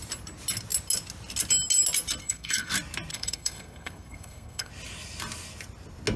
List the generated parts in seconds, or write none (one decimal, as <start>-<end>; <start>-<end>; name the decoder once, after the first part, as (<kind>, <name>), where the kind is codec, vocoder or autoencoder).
2.2-2.7 (codec, SNAC); 3.1-4.7